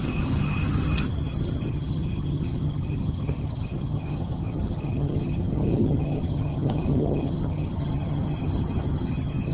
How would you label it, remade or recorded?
remade